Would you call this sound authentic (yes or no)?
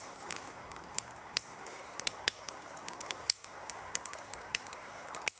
no